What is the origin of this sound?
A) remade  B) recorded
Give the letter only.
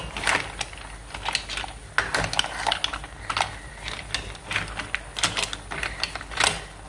B